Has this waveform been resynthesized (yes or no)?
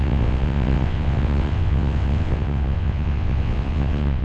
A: yes